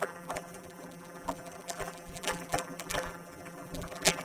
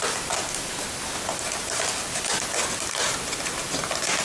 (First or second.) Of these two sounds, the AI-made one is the first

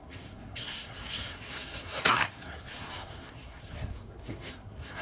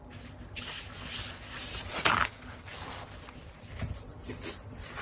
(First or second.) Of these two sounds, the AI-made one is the first